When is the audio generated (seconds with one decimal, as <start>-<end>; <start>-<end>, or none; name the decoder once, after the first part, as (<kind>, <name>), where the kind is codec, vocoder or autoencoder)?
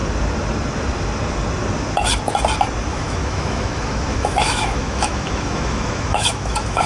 2.9-6.9 (autoencoder, DAC-VAE)